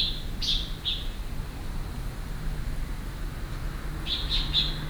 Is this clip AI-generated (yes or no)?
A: no